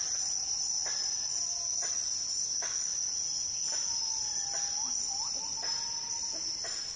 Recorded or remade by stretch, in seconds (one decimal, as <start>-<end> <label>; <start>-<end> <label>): 0.0-7.0 recorded